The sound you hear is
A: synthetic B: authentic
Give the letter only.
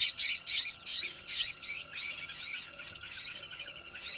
A